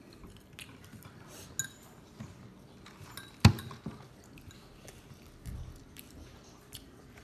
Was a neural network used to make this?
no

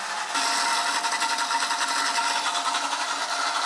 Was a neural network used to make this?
no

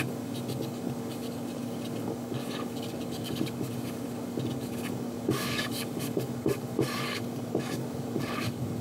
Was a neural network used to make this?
yes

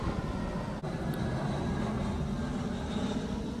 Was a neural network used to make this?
no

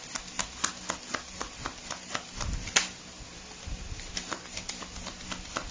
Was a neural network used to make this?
no